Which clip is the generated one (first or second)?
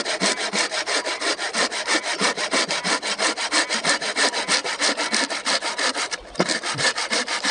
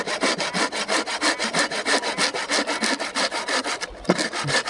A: first